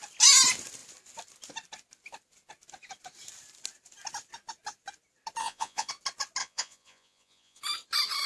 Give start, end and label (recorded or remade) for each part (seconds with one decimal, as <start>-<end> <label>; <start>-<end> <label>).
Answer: 0.0-5.4 recorded; 5.4-5.9 remade; 5.9-6.4 recorded; 6.4-7.6 remade; 7.6-8.3 recorded